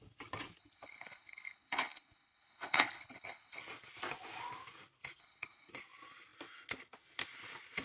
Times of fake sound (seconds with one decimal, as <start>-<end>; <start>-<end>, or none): 0.6-3.6; 5.2-5.7